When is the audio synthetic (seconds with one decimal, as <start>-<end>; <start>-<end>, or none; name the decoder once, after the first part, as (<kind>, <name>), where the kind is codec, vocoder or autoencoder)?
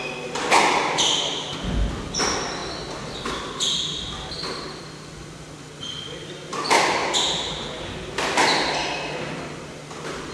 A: none